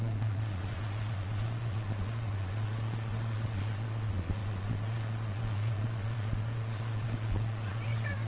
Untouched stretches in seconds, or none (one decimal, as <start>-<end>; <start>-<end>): none